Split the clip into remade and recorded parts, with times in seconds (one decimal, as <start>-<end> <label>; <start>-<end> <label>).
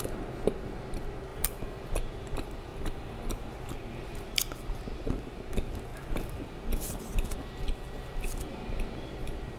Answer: 0.0-1.3 recorded; 1.3-2.0 remade; 2.0-2.7 recorded; 2.7-3.5 remade; 3.5-5.9 recorded; 5.9-7.0 remade; 7.0-9.6 recorded